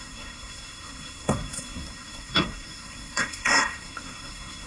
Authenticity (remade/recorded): remade